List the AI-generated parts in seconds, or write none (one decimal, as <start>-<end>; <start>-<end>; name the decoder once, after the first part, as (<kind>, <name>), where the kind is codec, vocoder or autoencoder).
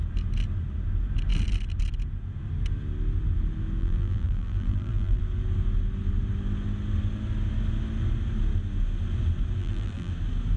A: 3.8-5.2 (vocoder, BigVGAN v2); 9.6-10.1